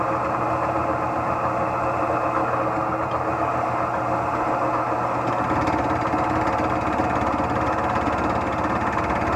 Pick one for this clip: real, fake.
real